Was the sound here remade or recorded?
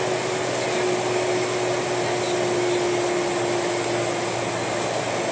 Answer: recorded